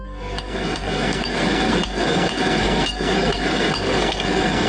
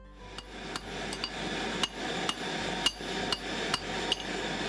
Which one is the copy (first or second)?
first